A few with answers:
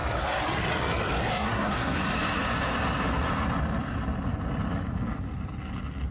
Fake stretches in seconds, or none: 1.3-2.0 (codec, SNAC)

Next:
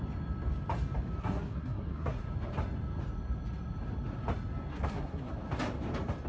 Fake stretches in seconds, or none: 1.2-2.2 (codec, SNAC); 4.7-5.3

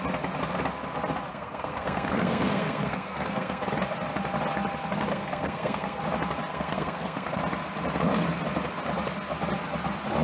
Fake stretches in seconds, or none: 1.3-3.7 (codec, SNAC); 5.1-6.0; 6.5-7.4

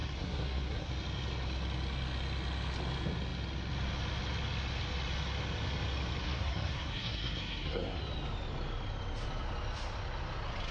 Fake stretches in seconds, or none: 0.0-0.9 (codec, SNAC); 6.2-8.0

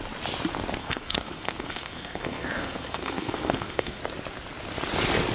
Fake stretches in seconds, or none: 0.8-4.0 (codec, SNAC)